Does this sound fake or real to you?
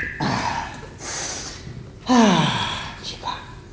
real